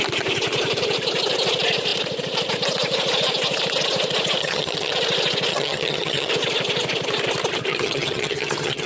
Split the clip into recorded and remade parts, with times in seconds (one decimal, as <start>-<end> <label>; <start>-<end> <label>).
0.0-4.4 recorded; 4.4-4.9 remade; 4.9-5.5 recorded; 5.5-6.3 remade; 6.3-7.7 recorded; 7.7-8.9 remade